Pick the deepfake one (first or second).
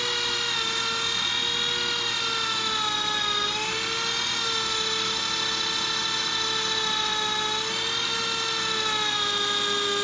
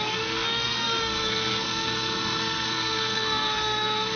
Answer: second